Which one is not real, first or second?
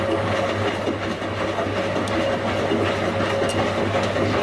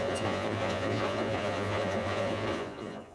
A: second